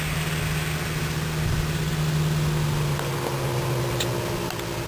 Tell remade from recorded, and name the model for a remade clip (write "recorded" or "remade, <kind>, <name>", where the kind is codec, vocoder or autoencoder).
recorded